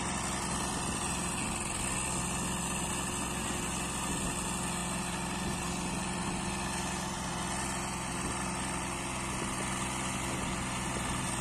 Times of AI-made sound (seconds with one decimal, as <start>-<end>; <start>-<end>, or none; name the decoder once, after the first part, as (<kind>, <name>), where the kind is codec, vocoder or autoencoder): none